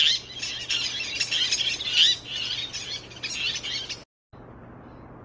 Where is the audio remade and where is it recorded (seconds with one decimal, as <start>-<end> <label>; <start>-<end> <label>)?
0.0-5.2 recorded